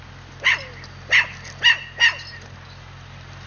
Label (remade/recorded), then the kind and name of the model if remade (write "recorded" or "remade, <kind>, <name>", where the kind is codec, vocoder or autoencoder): recorded